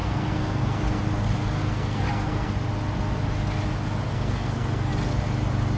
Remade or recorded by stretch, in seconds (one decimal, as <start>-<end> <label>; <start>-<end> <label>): 0.0-1.0 remade; 1.0-1.6 recorded; 1.6-2.5 remade; 2.5-4.1 recorded; 4.1-4.9 remade; 4.9-5.8 recorded